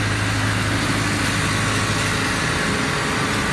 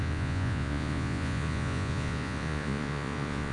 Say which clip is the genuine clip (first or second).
first